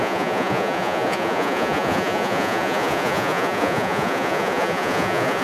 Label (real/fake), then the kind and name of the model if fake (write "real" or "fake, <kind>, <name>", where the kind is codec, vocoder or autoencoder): fake, vocoder, Vocos